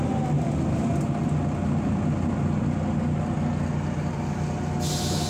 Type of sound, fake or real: real